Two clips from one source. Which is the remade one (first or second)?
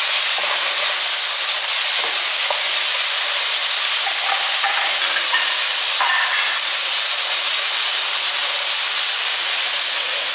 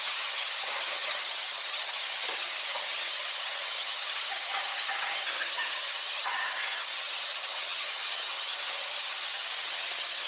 second